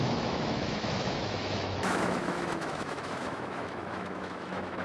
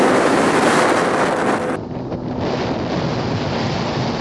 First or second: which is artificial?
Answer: first